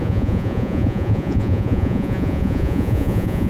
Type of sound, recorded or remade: remade